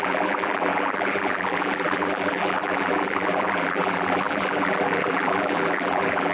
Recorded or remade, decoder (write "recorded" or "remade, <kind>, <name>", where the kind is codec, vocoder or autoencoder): remade, vocoder, BigVGAN v2